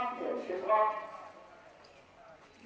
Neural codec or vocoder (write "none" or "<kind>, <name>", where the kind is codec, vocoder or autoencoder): vocoder, Vocos